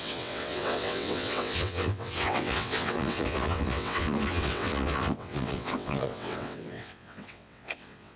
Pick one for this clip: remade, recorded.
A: remade